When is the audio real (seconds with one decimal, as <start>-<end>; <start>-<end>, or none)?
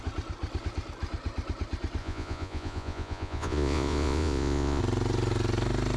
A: 0.0-2.0; 4.8-6.0